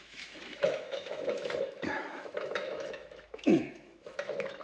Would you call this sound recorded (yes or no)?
no